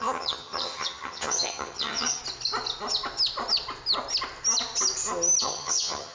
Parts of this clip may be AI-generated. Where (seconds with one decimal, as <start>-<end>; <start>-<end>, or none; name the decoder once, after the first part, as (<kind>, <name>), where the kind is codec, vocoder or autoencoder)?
0.0-2.2 (vocoder, HiFi-GAN); 5.4-6.1